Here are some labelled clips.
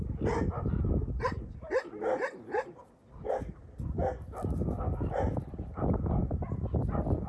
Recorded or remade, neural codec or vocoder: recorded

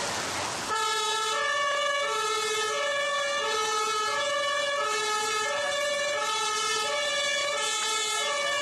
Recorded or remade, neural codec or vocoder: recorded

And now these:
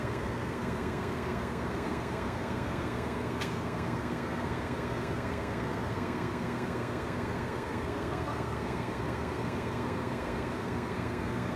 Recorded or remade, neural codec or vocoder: remade, codec, SNAC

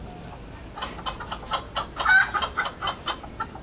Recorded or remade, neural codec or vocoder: recorded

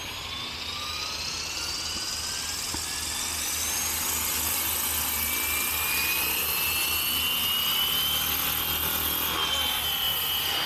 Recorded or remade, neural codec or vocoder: recorded